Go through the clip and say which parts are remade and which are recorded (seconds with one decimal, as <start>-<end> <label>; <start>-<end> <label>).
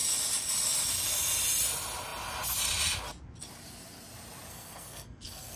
0.0-4.5 recorded; 4.5-5.6 remade